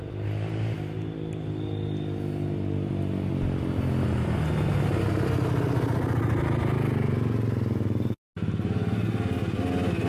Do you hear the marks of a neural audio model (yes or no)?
no